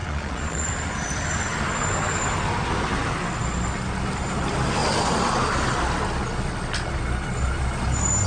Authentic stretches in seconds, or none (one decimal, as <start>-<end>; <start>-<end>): 0.7-8.3